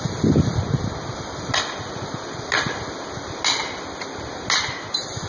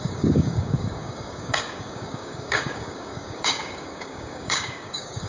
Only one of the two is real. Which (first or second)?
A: first